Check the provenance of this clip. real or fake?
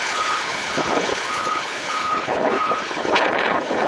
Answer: fake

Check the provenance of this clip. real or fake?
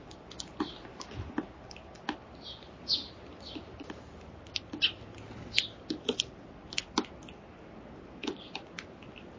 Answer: real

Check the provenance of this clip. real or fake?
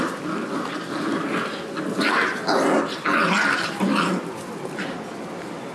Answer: real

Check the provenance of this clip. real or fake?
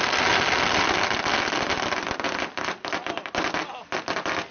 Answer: real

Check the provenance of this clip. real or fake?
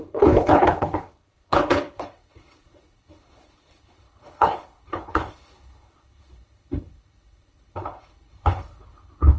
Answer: fake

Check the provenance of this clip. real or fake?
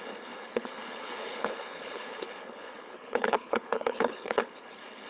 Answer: fake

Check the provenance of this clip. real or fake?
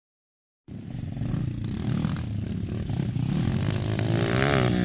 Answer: real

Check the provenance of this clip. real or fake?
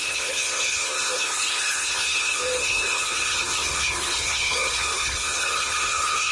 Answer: fake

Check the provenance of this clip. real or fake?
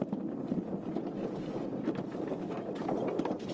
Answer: real